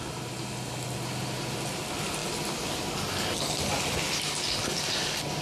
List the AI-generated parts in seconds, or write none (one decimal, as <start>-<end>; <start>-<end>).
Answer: none